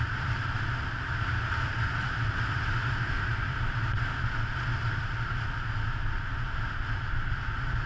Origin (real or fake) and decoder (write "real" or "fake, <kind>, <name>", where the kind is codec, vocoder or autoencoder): real